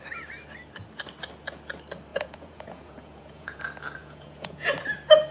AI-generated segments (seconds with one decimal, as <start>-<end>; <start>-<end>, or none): 2.1-3.6; 4.0-4.7